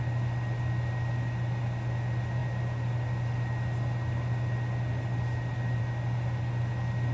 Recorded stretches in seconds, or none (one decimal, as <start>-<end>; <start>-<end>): 0.0-7.1

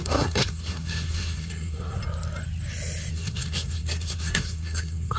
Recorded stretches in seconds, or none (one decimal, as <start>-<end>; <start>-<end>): 2.0-3.1

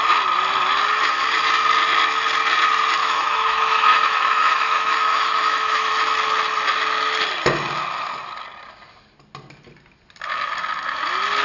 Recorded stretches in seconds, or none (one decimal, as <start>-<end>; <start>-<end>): 0.0-3.0; 5.9-11.4

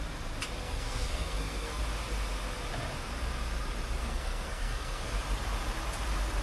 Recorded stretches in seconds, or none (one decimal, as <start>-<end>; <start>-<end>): 0.0-0.6; 1.8-4.0; 5.2-6.4

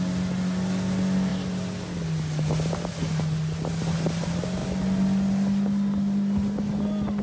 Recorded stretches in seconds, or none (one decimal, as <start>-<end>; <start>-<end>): 0.0-7.2

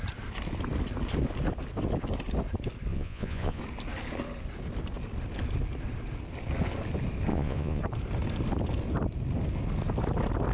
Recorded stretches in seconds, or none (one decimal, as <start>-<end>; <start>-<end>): 0.0-2.9; 3.6-7.3; 7.8-10.5

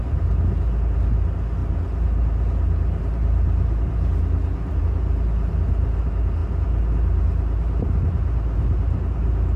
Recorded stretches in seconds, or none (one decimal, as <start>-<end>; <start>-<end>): 0.0-9.6

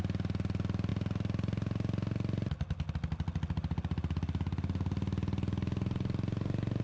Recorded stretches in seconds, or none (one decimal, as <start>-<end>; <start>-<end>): 0.0-6.8